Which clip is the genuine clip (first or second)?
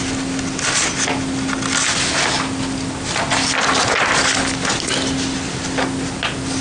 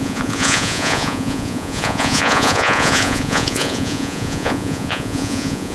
first